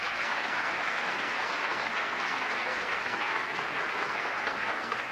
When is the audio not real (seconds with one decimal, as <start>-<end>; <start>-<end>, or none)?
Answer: 0.0-5.1